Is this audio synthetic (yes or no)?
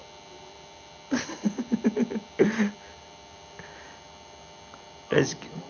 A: no